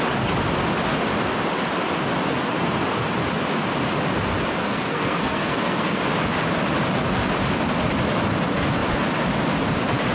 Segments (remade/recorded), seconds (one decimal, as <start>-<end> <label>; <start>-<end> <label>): 0.0-4.6 recorded; 4.6-6.0 remade; 6.0-10.1 recorded